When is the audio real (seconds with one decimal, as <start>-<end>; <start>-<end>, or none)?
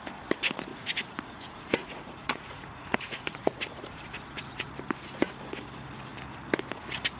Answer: 0.0-0.7; 4.7-7.2